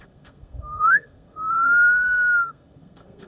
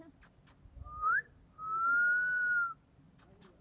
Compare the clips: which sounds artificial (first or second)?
first